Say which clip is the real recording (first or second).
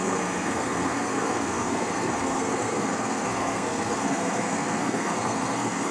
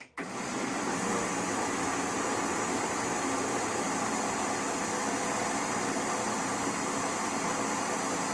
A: second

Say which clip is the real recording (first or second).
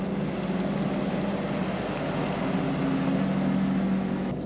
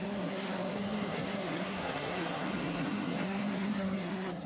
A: first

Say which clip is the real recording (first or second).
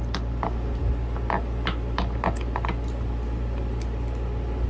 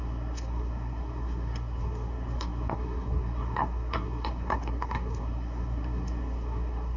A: first